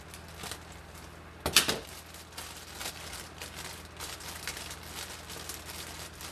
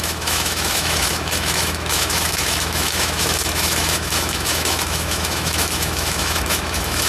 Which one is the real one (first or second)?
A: first